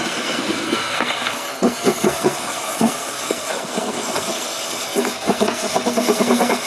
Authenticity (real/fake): fake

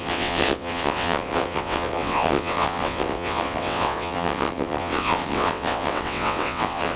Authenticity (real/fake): fake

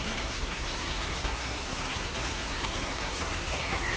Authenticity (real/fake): fake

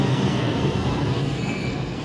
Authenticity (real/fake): fake